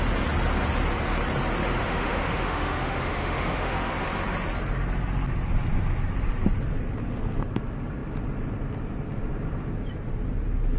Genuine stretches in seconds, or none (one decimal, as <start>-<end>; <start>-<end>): 0.0-1.8; 3.9-10.8